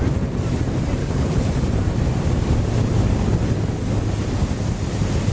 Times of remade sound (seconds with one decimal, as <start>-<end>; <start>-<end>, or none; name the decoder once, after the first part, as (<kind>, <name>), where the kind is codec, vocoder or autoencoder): 1.0-1.5 (codec, HILCodec)